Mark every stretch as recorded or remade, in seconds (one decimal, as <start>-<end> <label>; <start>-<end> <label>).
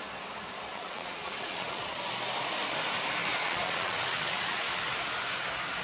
0.0-0.7 recorded; 0.7-2.0 remade; 2.0-3.3 recorded; 3.3-4.8 remade; 4.8-5.8 recorded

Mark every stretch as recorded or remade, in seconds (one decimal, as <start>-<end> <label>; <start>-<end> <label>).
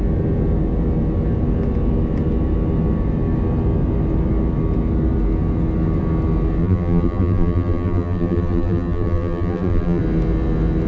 0.0-6.6 recorded; 6.6-10.0 remade; 10.0-10.9 recorded